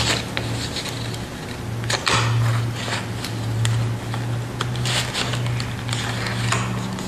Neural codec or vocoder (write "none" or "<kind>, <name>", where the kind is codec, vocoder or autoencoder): none